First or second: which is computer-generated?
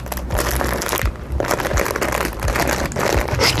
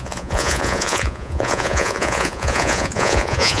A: second